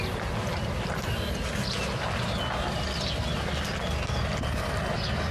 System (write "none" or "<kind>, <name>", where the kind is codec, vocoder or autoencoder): none